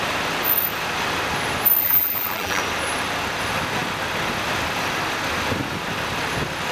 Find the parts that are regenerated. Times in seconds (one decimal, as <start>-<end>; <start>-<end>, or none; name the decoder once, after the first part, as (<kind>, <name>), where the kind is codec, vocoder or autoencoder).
1.8-2.6 (vocoder, BigVGAN v2)